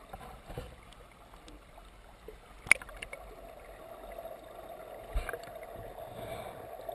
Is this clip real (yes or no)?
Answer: yes